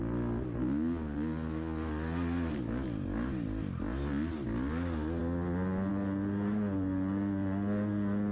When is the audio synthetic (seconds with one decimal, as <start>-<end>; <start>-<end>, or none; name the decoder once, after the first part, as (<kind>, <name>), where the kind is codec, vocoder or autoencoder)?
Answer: none